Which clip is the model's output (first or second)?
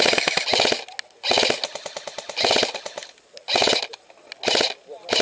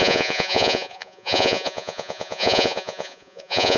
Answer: second